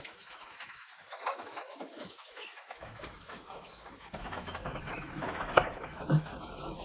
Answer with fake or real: fake